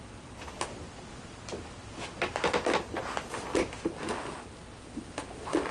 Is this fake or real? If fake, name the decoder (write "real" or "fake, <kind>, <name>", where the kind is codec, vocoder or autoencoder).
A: real